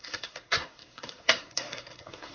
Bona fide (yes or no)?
no